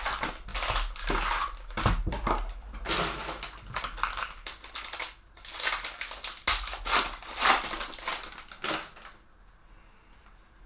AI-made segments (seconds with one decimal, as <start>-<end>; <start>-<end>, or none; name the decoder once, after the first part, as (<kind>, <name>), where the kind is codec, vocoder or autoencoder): none